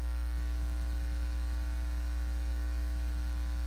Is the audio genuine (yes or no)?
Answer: no